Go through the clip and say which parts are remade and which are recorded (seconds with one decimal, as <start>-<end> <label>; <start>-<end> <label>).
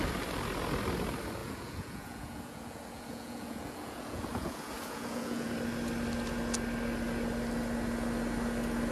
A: 0.0-1.4 recorded; 1.4-5.5 remade; 5.5-8.9 recorded